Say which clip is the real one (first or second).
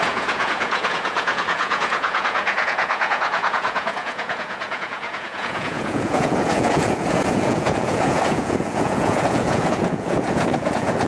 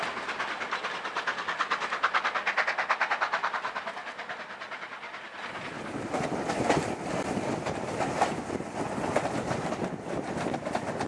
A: second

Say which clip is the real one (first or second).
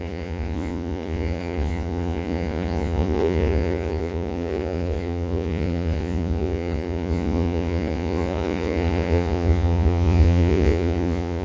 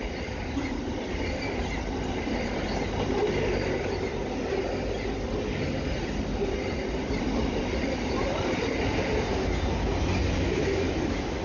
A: second